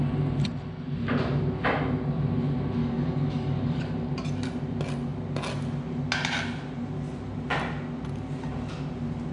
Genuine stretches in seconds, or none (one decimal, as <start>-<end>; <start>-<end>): 0.0-2.8; 3.8-9.3